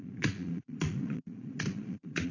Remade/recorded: remade